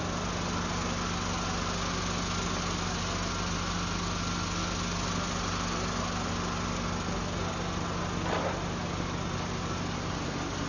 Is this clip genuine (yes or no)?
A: yes